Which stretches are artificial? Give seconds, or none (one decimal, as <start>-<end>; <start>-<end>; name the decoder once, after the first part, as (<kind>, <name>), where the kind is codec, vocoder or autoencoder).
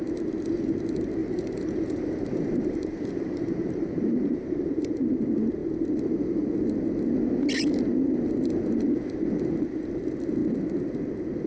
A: 1.2-5.0 (vocoder, BigVGAN v2)